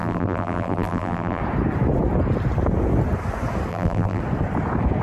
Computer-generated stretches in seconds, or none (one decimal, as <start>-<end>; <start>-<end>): 0.0-1.4; 3.7-4.2